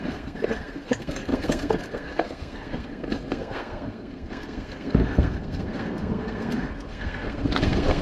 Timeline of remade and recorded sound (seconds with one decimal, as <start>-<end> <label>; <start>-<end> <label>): 0.0-8.0 remade